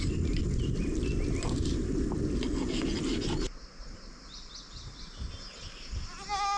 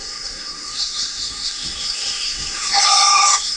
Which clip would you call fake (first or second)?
second